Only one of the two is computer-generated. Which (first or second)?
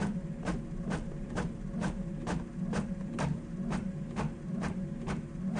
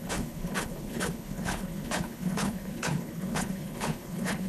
second